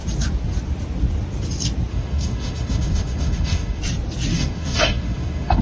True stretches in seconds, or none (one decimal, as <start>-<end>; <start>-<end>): 0.0-1.9; 3.8-4.3